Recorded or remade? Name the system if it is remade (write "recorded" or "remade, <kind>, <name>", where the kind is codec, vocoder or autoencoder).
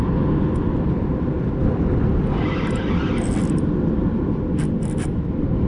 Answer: recorded